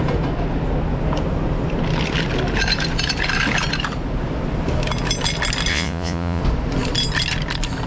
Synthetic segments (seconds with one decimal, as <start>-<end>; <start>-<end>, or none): 5.7-6.4